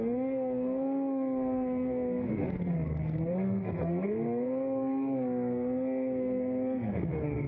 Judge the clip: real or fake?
fake